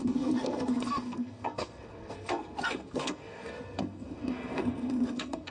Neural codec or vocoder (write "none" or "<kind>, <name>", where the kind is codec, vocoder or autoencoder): codec, SNAC